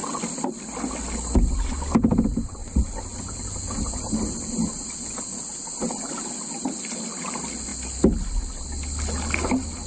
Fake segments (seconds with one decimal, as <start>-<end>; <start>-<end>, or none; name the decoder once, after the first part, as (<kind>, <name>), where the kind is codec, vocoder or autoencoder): none